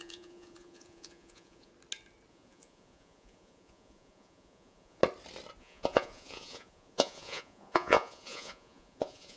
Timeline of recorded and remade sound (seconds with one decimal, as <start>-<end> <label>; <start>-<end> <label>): 0.0-1.7 remade; 1.7-2.3 recorded; 2.3-5.0 remade; 5.0-5.6 recorded; 5.6-9.4 remade